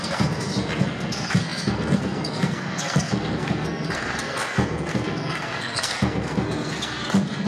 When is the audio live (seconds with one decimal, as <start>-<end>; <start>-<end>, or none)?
none